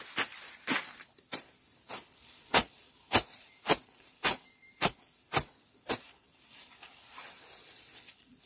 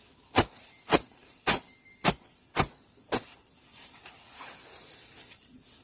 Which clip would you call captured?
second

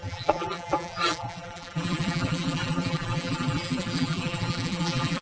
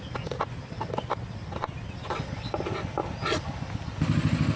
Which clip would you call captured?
second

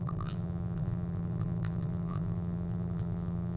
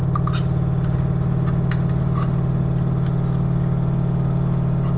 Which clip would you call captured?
second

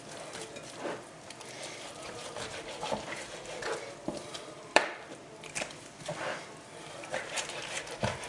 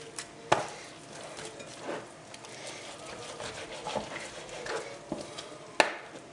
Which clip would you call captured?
second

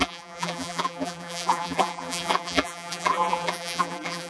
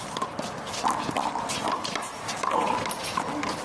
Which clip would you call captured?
second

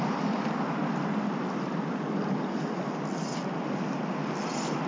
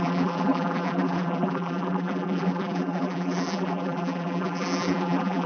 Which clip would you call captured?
first